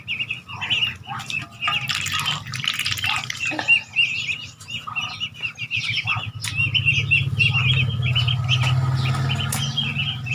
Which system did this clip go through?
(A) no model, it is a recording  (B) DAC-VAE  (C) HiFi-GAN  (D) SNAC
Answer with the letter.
A